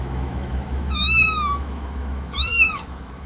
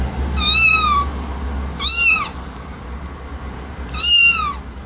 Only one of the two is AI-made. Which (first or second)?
first